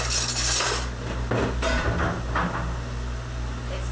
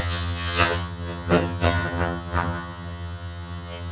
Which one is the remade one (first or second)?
second